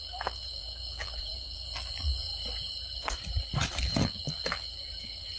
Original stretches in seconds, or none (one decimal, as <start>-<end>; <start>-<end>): 2.3-3.8